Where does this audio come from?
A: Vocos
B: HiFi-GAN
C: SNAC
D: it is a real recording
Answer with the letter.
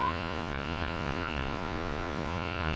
A